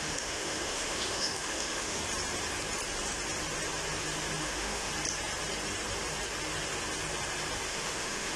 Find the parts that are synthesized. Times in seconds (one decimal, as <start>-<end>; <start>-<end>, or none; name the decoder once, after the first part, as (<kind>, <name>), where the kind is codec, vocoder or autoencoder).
0.0-2.0 (autoencoder, DAC-VAE); 4.4-4.9; 7.7-8.4